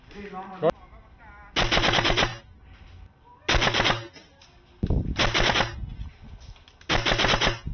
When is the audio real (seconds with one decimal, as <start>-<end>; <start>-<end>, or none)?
0.0-7.7